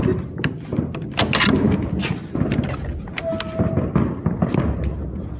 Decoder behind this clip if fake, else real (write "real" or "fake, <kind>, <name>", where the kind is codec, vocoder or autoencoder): real